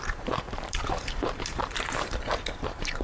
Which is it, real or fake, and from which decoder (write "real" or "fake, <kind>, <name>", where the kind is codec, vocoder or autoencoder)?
fake, vocoder, BigVGAN v2